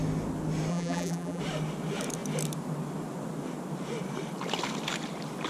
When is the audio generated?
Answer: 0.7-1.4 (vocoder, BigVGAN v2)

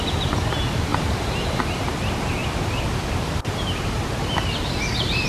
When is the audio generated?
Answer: 0.9-1.6 (vocoder, BigVGAN v2); 2.4-3.5

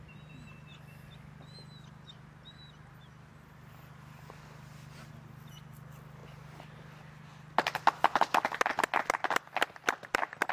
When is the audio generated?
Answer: none

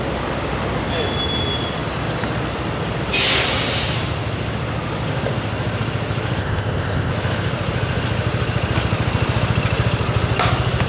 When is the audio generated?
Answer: 6.4-7.1 (codec, ZipCodec)

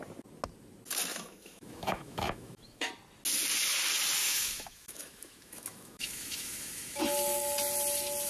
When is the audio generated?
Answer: 1.1-2.9 (autoencoder, DAC-VAE); 4.2-7.0

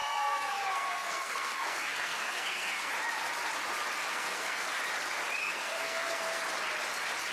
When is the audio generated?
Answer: 0.0-2.9 (codec, SNAC); 4.1-4.8; 5.4-6.4

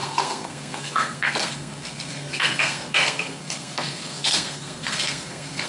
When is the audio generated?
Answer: 0.0-5.7 (codec, SNAC)